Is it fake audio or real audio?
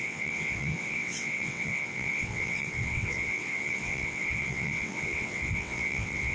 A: fake